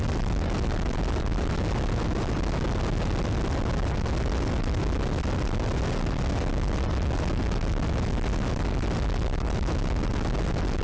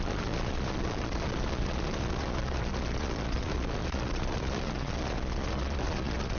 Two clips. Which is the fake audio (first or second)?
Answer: second